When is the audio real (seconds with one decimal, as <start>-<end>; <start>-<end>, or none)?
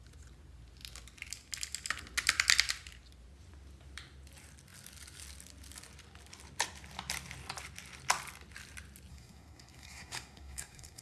0.0-9.1